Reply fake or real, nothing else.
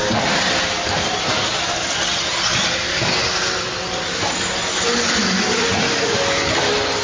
real